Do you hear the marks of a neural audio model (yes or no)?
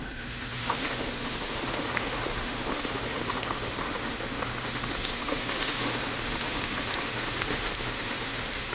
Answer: yes